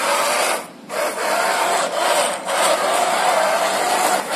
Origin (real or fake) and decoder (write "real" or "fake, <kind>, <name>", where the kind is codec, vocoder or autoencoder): real